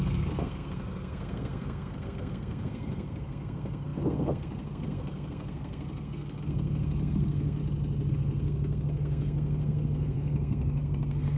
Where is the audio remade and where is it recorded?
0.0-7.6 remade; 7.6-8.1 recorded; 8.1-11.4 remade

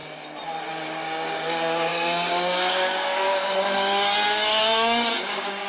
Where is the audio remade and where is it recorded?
0.0-0.7 recorded; 0.7-5.7 remade